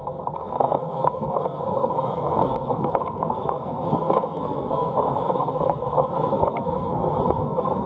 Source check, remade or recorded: remade